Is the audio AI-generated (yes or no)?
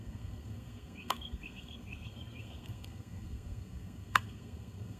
yes